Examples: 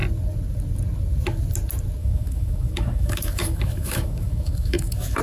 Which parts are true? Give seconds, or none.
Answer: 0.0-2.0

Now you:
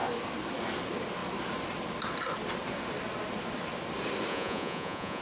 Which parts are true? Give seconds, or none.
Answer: 0.0-4.3

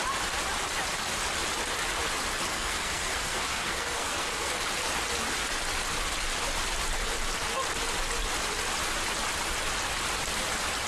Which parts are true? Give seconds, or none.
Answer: 0.0-2.5; 4.5-10.9

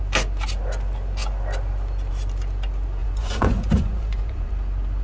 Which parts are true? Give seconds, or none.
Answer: 0.0-3.0; 4.5-5.0

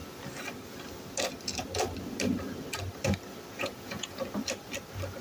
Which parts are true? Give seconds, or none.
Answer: 0.0-3.6; 4.2-5.2

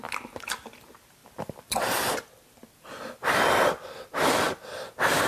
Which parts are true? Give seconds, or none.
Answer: 0.0-5.3